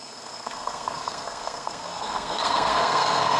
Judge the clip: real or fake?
fake